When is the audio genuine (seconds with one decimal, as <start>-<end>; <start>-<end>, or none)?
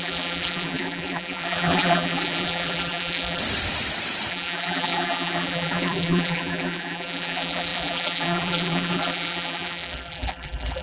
3.4-4.3